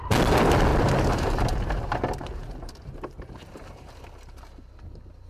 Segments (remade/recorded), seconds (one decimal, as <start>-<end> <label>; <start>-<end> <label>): 0.0-0.7 recorded; 0.7-3.9 remade; 3.9-5.3 recorded